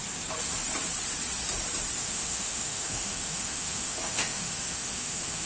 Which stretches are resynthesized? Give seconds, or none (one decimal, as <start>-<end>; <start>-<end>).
2.0-5.5